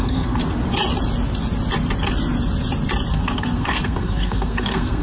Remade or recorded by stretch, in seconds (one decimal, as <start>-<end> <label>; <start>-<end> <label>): 0.0-0.4 remade; 0.4-3.1 recorded; 3.1-5.0 remade

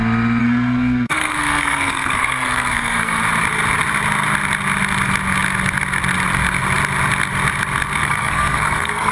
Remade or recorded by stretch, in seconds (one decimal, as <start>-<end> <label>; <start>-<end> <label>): 0.0-0.4 recorded; 0.4-3.2 remade; 3.2-8.0 recorded; 8.0-9.1 remade